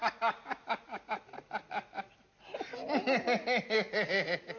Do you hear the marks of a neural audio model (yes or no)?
no